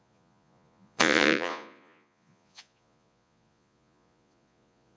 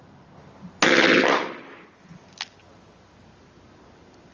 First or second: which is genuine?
second